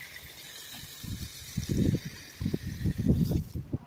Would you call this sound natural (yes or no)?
yes